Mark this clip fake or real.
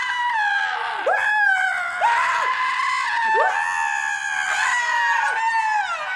real